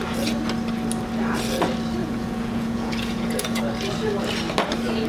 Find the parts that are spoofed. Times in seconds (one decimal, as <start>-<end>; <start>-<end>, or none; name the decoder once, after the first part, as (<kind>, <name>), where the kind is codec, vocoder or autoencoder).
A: 2.0-3.6 (vocoder, Vocos)